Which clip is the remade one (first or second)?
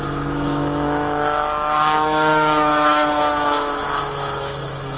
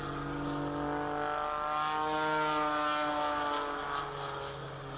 first